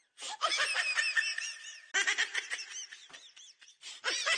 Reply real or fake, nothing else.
real